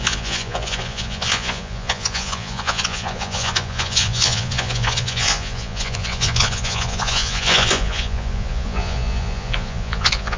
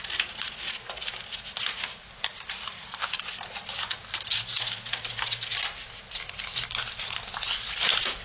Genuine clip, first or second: second